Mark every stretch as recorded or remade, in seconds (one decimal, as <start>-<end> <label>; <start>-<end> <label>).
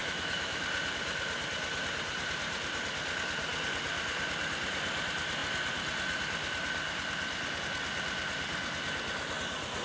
0.0-0.6 remade; 0.6-9.8 recorded